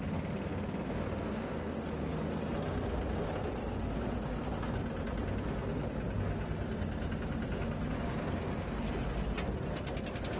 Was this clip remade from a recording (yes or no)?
no